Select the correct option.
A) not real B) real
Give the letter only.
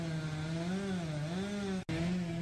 B